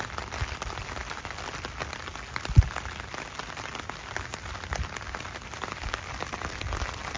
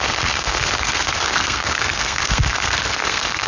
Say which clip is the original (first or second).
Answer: first